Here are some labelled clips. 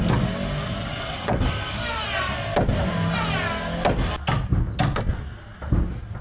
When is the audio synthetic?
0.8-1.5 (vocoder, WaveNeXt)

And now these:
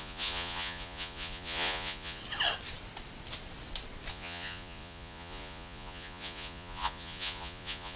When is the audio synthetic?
0.0-2.2 (vocoder, Vocos); 4.1-8.0

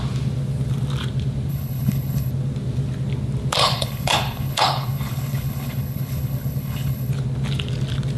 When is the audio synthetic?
1.5-2.3 (codec, HILCodec); 3.6-7.1

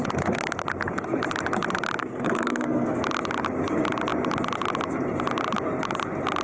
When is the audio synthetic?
2.0-3.0 (codec, SNAC)

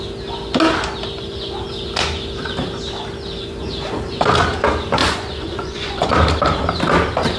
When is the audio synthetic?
5.0-6.1 (vocoder, Vocos)

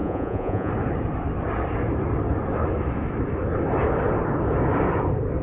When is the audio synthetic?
0.0-0.7 (vocoder, Vocos)